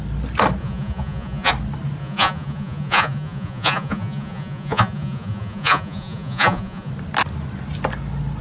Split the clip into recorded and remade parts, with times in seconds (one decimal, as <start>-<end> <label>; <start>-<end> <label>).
0.0-0.6 recorded; 0.6-1.5 remade; 1.5-2.0 recorded; 2.0-6.9 remade; 6.9-8.4 recorded